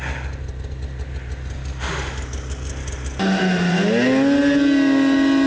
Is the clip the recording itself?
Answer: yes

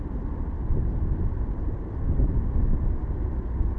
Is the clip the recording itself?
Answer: no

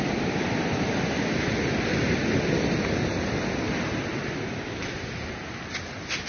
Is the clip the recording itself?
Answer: yes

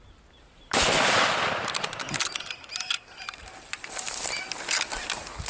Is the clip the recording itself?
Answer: yes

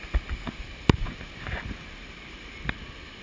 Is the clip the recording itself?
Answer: yes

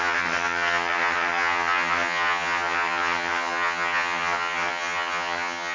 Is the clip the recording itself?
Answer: no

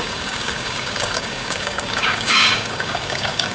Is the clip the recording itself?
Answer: no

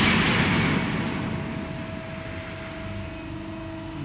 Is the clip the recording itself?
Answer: yes